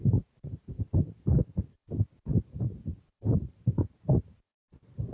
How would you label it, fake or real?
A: fake